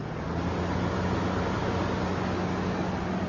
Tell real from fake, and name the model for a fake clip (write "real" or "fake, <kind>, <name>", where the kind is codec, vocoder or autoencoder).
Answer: real